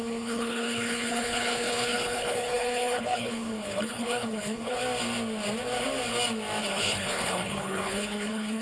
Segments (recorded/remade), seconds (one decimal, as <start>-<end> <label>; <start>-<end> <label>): 0.0-4.8 remade; 4.8-6.6 recorded; 6.6-8.6 remade